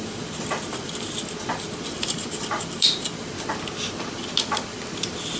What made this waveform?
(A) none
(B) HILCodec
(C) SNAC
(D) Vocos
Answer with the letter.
A